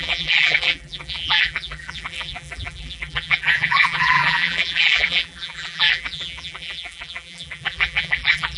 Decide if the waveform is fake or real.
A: fake